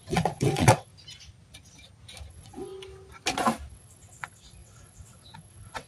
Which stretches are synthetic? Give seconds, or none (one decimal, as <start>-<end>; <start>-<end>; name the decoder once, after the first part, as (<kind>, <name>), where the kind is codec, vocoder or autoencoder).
0.0-0.9 (vocoder, WaveNeXt); 2.3-2.7; 3.7-5.9